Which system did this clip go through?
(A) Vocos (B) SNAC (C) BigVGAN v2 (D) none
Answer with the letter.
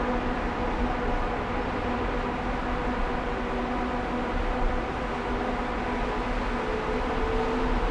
D